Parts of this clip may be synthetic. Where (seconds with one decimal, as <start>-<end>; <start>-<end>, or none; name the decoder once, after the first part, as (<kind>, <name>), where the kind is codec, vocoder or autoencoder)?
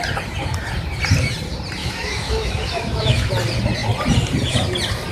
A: 1.8-3.3 (autoencoder, DAC-VAE)